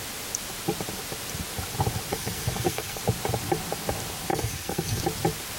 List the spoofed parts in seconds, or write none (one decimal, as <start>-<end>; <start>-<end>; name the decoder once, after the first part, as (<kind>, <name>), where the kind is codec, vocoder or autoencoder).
2.1-3.0 (codec, SNAC); 4.3-5.0